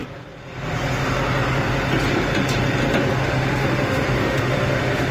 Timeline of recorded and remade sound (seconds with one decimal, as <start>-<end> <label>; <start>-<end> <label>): 0.0-3.2 recorded; 3.2-5.1 remade